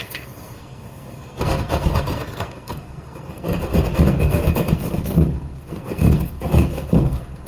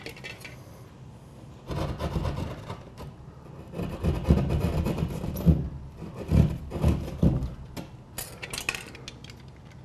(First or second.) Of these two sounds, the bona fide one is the second